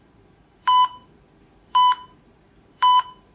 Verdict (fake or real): fake